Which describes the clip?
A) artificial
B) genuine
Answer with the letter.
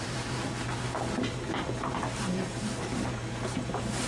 A